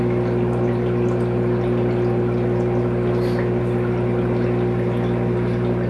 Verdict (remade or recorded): recorded